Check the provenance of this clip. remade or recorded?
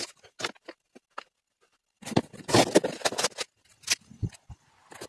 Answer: recorded